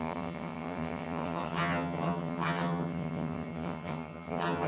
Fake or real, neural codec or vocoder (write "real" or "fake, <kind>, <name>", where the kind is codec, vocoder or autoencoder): fake, vocoder, HiFi-GAN